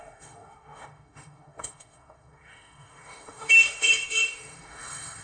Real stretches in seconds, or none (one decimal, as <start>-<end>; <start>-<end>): none